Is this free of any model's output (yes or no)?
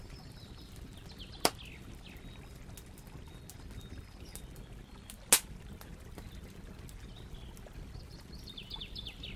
yes